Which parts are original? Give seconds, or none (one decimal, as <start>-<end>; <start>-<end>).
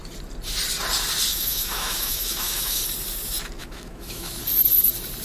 0.0-1.3; 2.8-3.6; 4.4-5.2